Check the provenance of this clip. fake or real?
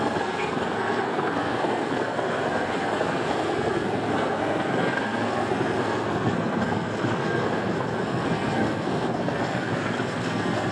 fake